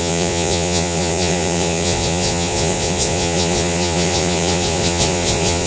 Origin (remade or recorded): remade